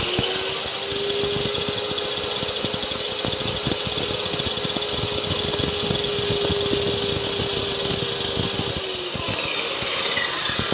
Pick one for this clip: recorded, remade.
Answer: recorded